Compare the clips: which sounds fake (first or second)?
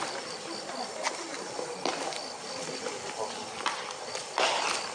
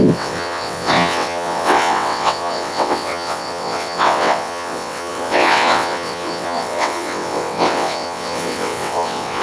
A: second